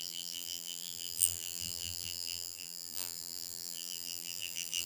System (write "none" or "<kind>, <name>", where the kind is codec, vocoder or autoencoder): vocoder, BigVGAN v2